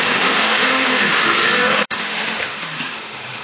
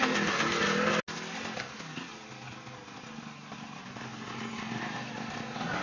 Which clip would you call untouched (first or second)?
second